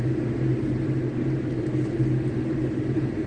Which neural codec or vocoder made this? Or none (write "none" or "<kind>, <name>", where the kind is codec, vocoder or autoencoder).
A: none